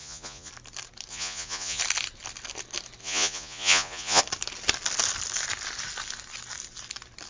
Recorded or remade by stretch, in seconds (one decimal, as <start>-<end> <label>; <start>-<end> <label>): 0.0-0.5 remade; 0.5-1.1 recorded; 1.1-1.8 remade; 1.8-3.0 recorded; 3.0-4.2 remade; 4.2-7.3 recorded